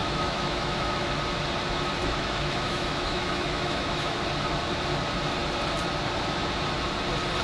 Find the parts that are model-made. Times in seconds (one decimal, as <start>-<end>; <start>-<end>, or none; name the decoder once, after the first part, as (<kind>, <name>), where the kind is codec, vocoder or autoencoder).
0.0-1.1 (autoencoder, DAC-VAE); 2.0-4.2